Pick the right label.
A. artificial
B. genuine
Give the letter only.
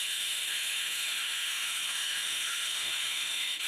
A